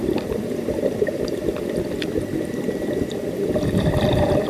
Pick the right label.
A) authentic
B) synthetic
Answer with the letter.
B